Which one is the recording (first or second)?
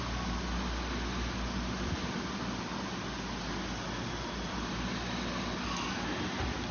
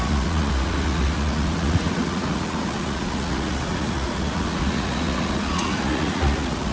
first